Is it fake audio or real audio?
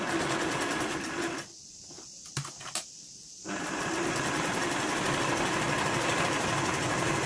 real